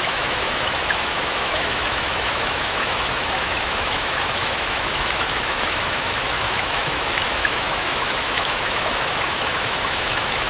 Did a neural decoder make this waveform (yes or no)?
yes